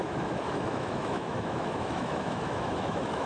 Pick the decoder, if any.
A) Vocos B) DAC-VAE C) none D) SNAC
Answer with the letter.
B